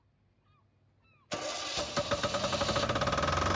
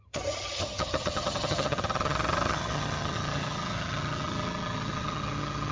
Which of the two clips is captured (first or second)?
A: first